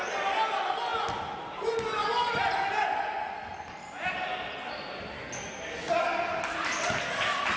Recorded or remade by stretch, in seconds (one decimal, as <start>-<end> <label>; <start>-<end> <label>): 0.0-7.6 recorded